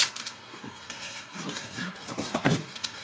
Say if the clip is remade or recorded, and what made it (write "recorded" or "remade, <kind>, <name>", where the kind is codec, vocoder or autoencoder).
remade, codec, SNAC